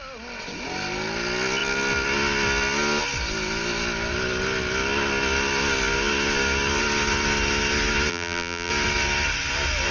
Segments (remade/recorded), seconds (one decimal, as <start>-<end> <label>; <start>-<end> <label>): 0.0-8.1 recorded; 8.1-8.7 remade; 8.7-9.9 recorded